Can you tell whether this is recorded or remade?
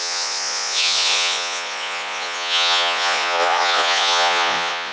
remade